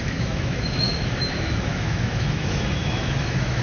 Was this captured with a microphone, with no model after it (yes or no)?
no